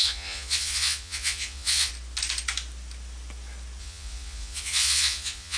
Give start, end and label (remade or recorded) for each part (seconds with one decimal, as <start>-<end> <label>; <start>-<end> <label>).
0.0-1.9 remade; 1.9-3.8 recorded; 3.8-5.6 remade